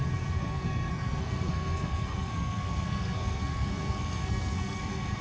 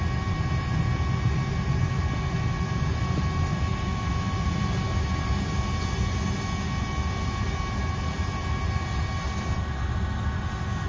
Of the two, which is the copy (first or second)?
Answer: first